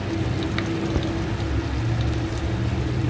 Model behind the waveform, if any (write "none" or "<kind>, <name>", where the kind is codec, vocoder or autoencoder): none